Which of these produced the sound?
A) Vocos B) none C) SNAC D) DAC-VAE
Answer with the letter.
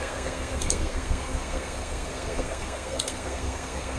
C